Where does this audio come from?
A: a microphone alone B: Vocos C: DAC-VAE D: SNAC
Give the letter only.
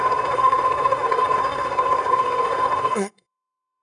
D